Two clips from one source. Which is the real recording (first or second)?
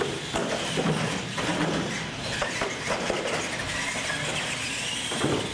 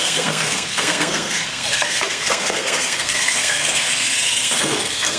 first